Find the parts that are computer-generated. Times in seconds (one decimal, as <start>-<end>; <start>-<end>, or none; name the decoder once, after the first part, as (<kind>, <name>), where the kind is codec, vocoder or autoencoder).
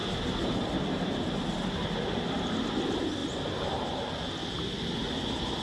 none